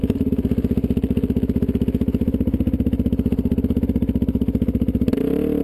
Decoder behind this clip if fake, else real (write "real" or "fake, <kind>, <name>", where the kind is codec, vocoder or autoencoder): real